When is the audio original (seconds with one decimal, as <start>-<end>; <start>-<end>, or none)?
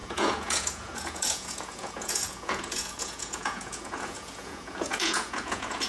none